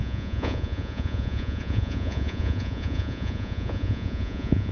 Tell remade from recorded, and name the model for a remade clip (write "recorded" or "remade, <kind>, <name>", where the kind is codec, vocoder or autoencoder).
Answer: remade, vocoder, Vocos